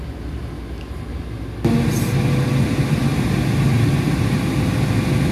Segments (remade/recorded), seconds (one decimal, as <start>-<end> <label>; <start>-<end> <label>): 0.0-5.3 recorded